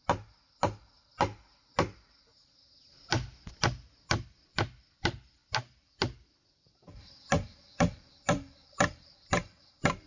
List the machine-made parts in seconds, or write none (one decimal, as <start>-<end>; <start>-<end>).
4.1-5.4; 5.9-10.1